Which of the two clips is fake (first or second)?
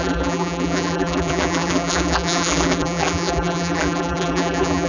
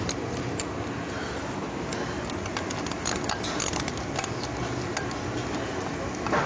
first